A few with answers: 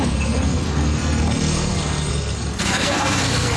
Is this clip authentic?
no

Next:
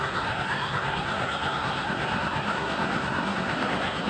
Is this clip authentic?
no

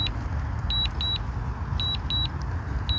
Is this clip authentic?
yes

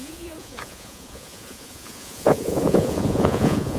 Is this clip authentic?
no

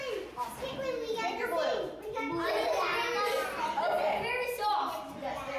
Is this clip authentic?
yes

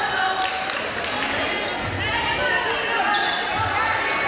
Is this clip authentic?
yes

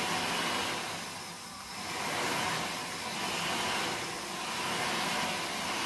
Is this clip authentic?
yes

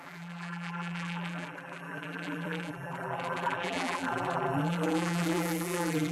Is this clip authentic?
no